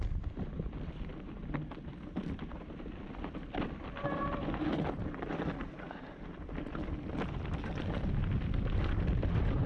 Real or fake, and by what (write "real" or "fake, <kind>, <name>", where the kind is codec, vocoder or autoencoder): real